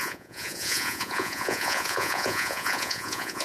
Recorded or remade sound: remade